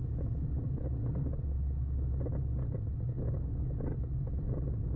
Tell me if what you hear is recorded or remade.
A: recorded